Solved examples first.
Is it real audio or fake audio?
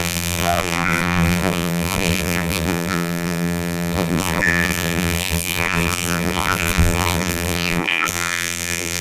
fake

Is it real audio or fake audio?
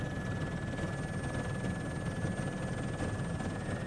real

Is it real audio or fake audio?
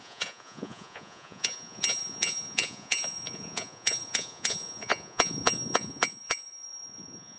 fake